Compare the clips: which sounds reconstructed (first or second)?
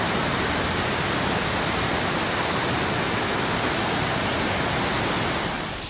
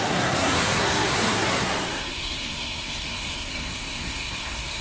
second